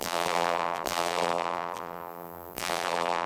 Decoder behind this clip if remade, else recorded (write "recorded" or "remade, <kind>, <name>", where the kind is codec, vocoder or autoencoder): remade, vocoder, BigVGAN v2